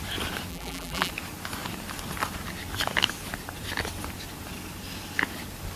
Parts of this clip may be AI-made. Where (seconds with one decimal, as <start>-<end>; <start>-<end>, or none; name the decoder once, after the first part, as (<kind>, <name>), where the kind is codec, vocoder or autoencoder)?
0.5-1.1 (vocoder, BigVGAN v2)